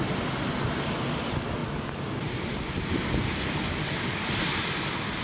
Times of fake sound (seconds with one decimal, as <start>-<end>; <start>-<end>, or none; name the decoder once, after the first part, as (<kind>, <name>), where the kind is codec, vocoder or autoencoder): none